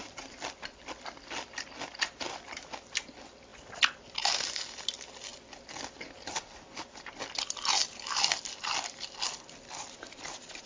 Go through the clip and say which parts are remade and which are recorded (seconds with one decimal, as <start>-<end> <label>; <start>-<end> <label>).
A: 0.0-10.7 recorded